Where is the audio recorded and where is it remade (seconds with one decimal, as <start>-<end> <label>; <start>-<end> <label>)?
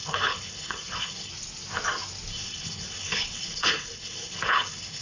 0.0-1.3 remade; 1.3-2.3 recorded; 2.3-5.0 remade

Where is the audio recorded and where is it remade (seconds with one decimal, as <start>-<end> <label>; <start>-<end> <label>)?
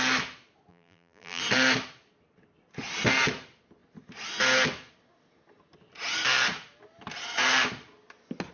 0.0-0.7 recorded; 0.7-1.4 remade; 1.4-8.5 recorded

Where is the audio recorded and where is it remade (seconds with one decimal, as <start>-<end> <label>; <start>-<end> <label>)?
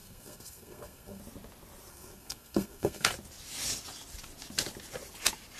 0.0-1.2 remade; 1.2-1.9 recorded; 1.9-3.1 remade; 3.1-5.6 recorded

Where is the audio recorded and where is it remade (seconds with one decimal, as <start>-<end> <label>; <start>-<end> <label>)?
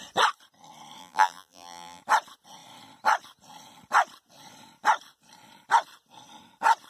0.0-1.0 recorded; 1.0-2.0 remade; 2.0-6.9 recorded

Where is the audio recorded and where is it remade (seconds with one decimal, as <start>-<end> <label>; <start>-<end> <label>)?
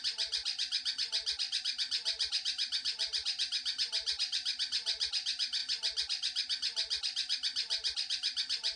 0.0-0.4 remade; 0.4-1.6 recorded; 1.6-5.6 remade; 5.6-8.8 recorded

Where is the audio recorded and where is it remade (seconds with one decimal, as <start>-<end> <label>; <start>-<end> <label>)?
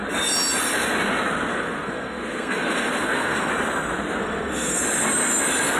0.0-1.5 recorded; 1.5-3.5 remade; 3.5-4.2 recorded; 4.2-4.8 remade; 4.8-5.8 recorded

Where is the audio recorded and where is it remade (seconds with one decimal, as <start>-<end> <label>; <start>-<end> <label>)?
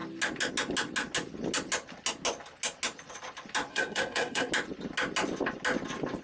0.0-3.7 recorded; 3.7-4.5 remade; 4.5-6.2 recorded